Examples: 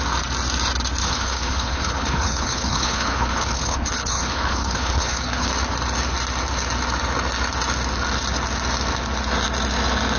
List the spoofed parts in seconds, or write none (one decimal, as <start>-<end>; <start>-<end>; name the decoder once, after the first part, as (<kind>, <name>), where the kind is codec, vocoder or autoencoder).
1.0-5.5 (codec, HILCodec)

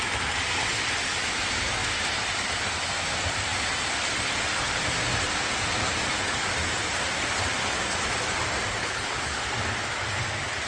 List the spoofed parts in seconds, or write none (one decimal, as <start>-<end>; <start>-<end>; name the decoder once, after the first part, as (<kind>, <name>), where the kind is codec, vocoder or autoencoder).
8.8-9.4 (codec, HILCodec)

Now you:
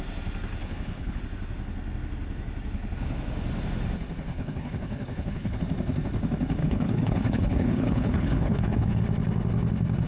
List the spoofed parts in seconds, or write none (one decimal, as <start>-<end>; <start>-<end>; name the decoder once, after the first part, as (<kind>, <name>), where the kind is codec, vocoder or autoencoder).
0.6-1.2 (codec, HILCodec); 4.3-5.6; 6.6-9.0